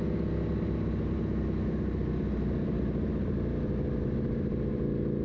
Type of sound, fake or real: real